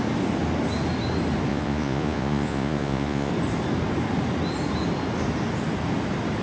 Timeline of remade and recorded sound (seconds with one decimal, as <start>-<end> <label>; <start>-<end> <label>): 0.0-1.5 recorded; 1.5-3.3 remade; 3.3-6.4 recorded